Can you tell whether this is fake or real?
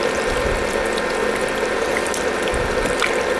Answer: real